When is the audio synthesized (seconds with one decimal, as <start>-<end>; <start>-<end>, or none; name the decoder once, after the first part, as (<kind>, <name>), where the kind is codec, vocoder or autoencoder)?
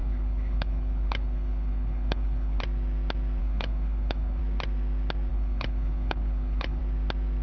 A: 0.0-2.6 (codec, HILCodec); 3.4-4.4; 5.3-6.8